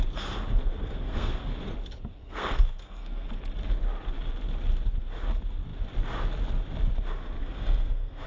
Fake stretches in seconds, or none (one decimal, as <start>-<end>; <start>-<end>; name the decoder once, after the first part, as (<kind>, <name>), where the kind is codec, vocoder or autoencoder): 0.7-1.5 (codec, SNAC); 2.2-3.3; 7.4-8.3